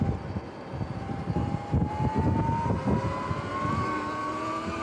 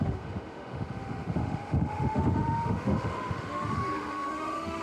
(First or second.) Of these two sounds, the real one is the first